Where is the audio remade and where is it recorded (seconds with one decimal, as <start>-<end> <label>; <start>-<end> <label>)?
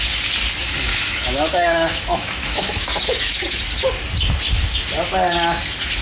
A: 0.0-0.9 recorded; 0.9-3.4 remade; 3.4-6.0 recorded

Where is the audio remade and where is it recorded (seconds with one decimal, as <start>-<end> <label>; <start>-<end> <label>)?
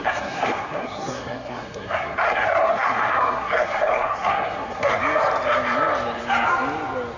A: 0.0-5.0 remade; 5.0-7.2 recorded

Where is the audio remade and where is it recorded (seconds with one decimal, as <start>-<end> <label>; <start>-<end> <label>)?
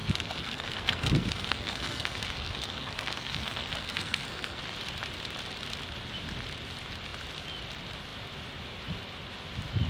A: 0.0-4.6 remade; 4.6-9.9 recorded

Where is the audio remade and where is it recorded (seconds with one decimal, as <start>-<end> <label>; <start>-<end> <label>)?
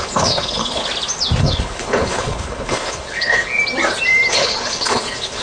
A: 0.0-0.8 remade; 0.8-1.4 recorded; 1.4-3.5 remade; 3.5-4.3 recorded; 4.3-5.4 remade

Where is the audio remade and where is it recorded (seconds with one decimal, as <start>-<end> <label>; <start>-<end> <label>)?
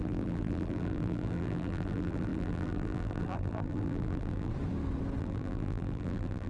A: 0.0-4.5 remade; 4.5-5.2 recorded; 5.2-6.5 remade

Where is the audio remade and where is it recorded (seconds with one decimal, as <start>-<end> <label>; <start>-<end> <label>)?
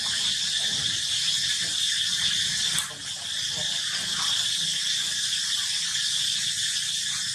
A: 0.0-7.3 recorded